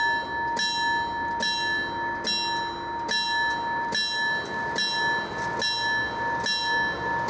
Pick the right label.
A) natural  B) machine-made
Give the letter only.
A